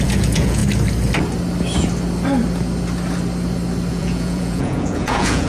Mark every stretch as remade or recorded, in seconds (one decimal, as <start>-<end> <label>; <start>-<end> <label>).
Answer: 0.0-0.6 remade; 0.6-3.9 recorded; 3.9-5.5 remade